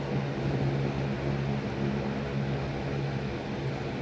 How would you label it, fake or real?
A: real